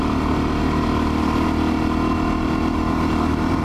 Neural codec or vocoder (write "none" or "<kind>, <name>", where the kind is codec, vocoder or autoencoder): none